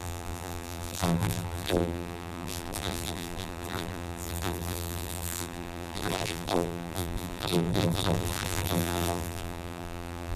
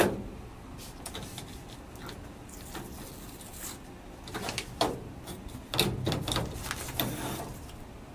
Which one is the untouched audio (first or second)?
second